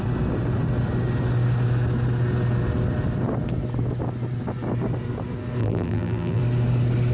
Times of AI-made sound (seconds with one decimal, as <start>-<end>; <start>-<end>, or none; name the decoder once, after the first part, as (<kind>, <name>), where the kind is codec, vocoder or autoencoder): 5.6-6.4 (vocoder, BigVGAN v2)